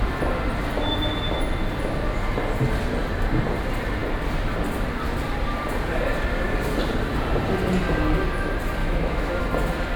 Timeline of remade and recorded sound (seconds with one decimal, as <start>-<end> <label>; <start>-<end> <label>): 0.0-8.8 recorded; 8.8-9.4 remade; 9.4-10.0 recorded